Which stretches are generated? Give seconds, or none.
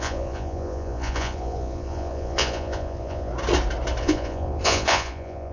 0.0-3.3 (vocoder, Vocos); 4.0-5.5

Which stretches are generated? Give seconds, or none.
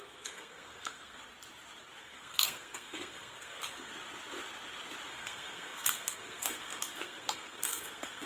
0.0-1.2 (codec, SNAC); 2.0-3.9; 5.1-8.3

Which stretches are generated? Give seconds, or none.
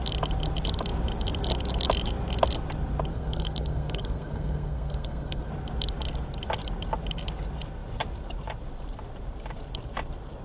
3.1-5.5 (codec, SNAC)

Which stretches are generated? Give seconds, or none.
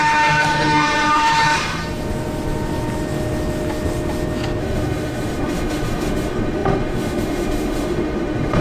0.0-1.8 (autoencoder, DAC-VAE); 4.6-8.6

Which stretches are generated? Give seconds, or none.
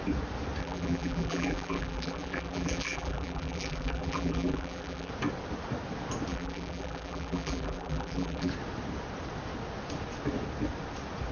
0.6-5.1 (vocoder, BigVGAN v2); 6.3-8.5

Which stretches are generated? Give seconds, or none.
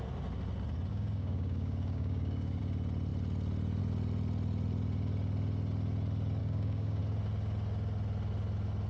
0.9-2.6 (codec, DAC); 6.4-7.0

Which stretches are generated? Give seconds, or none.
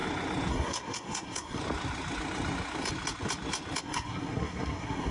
0.5-1.6 (codec, SNAC); 3.8-5.1